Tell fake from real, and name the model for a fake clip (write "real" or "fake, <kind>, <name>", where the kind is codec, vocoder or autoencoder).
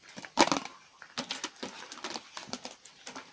real